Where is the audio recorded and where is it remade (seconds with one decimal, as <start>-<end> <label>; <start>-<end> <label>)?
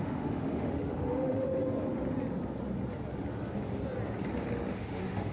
0.0-1.5 remade; 1.5-4.7 recorded; 4.7-5.3 remade